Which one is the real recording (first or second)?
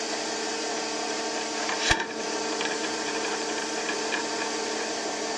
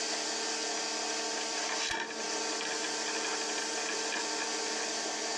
second